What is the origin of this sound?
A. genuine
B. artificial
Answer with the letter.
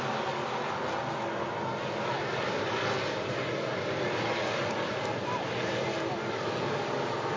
A